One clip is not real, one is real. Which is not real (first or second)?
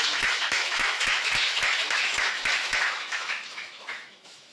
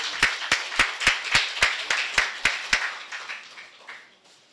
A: first